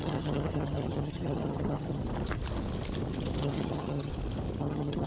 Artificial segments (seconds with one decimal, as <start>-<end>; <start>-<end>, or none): 0.0-2.0; 3.4-4.1; 4.6-5.1